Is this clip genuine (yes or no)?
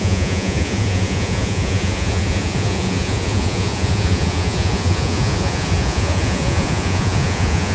no